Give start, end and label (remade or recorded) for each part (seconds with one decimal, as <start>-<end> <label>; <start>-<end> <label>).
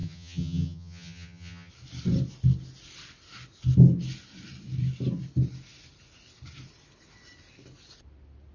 0.0-1.7 remade; 1.7-8.5 recorded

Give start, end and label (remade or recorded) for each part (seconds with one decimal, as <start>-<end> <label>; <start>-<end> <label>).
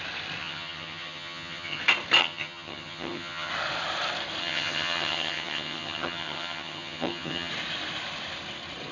0.0-0.4 recorded; 0.4-1.8 remade; 1.8-2.2 recorded; 2.2-3.5 remade; 3.5-4.4 recorded; 4.4-7.5 remade; 7.5-8.9 recorded